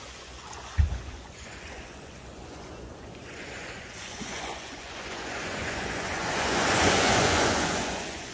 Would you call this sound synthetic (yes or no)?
yes